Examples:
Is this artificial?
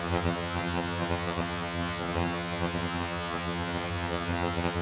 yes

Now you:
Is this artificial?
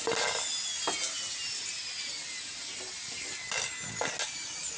no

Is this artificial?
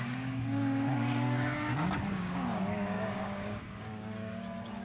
yes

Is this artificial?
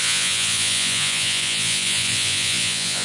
yes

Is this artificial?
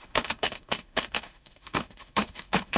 yes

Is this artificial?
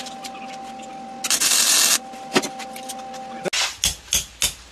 no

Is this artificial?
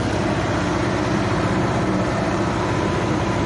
yes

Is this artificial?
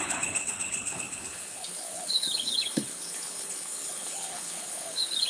yes